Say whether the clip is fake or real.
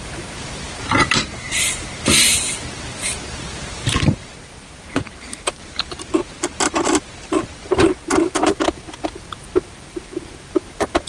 fake